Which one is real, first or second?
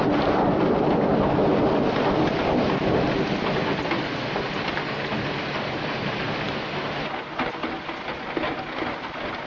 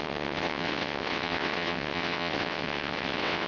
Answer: first